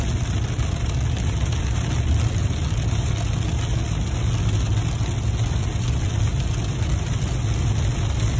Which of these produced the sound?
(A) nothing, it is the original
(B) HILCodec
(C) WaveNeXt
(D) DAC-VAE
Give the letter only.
A